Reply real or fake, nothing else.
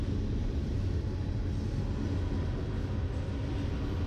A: real